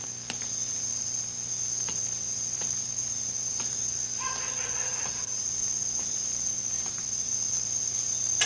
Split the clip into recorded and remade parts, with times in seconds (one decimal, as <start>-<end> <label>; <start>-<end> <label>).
0.0-8.5 recorded